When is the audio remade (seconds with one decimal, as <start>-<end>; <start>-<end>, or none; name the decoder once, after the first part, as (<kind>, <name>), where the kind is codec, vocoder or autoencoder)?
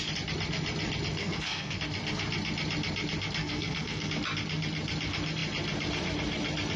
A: 1.2-1.8 (codec, SNAC); 3.4-4.1